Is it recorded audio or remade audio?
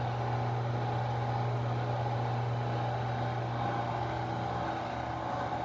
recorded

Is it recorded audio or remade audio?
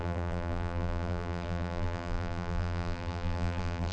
remade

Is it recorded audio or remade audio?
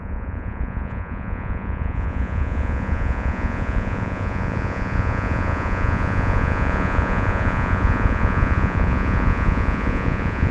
remade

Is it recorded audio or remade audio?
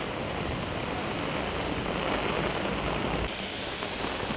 recorded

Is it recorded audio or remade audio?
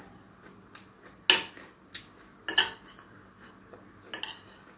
recorded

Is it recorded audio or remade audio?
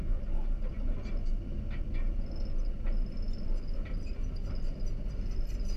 recorded